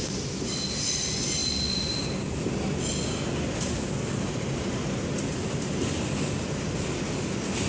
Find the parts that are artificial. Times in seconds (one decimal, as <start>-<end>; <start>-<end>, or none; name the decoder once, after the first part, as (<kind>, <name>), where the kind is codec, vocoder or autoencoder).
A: none